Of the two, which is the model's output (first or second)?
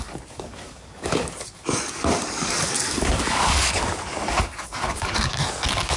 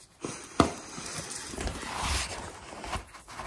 first